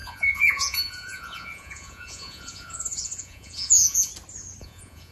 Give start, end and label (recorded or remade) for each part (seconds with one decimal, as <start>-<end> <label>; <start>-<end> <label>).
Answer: 0.0-4.1 remade; 4.1-4.6 recorded; 4.6-5.1 remade